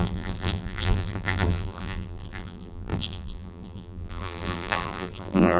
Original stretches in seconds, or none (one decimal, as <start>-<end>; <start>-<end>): none